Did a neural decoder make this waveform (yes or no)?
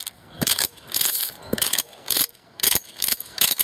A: yes